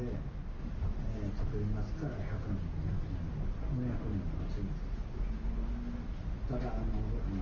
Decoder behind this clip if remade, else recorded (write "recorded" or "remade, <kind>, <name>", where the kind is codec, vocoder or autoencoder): recorded